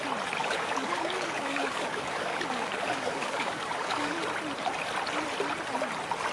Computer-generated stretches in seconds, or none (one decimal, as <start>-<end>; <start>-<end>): 0.4-4.2